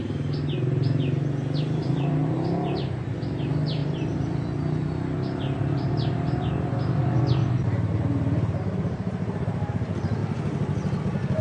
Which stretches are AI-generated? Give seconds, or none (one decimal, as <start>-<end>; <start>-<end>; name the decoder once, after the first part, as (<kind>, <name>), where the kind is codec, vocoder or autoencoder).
3.8-7.0 (vocoder, BigVGAN v2); 7.4-9.7